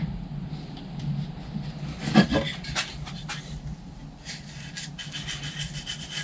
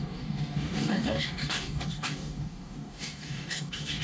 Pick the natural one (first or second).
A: first